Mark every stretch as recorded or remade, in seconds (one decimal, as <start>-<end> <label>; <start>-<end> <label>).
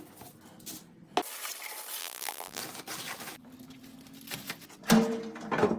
0.0-2.0 recorded; 2.0-2.6 remade; 2.6-5.8 recorded